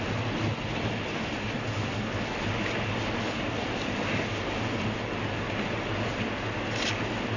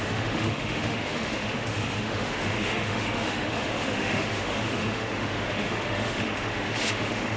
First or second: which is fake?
second